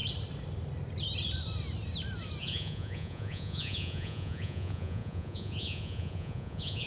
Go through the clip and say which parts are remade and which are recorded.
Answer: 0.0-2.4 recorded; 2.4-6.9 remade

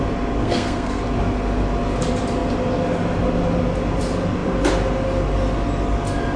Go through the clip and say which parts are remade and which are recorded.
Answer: 0.0-0.4 recorded; 0.4-1.0 remade; 1.0-6.4 recorded

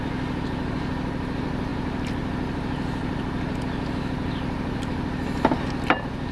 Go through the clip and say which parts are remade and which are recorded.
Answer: 0.0-6.3 recorded

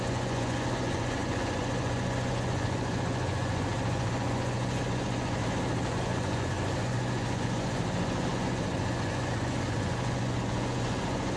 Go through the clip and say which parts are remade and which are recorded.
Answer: 0.0-5.4 remade; 5.4-5.9 recorded; 5.9-11.4 remade

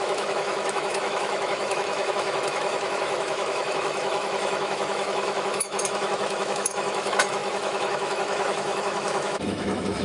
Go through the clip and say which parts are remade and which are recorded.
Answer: 0.0-10.0 remade